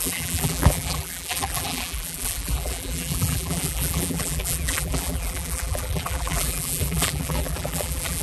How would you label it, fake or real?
fake